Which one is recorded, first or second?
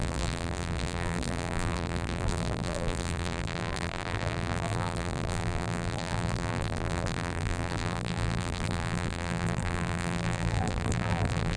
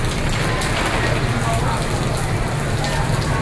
second